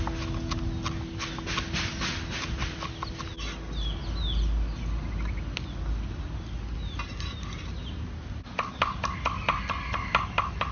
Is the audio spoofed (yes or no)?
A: no